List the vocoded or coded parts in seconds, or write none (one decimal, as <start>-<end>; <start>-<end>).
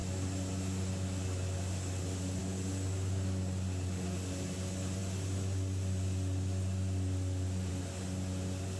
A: none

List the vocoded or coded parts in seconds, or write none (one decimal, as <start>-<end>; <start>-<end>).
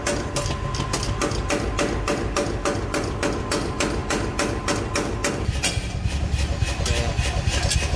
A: none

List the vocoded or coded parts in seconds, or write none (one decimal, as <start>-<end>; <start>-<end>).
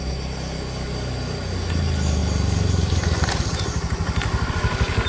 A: none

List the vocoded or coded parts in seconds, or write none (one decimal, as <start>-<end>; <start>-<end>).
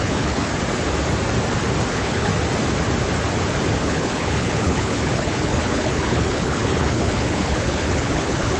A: 0.0-0.5; 1.9-2.3; 3.8-8.6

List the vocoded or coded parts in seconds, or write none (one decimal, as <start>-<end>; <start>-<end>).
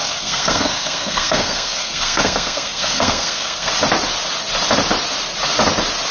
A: 0.0-3.7